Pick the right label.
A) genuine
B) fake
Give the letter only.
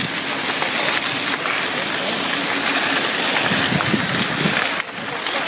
A